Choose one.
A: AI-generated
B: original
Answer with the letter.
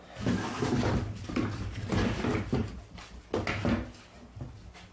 B